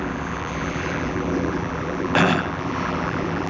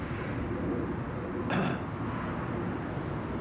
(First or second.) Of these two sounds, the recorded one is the second